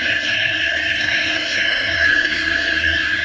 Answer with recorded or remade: remade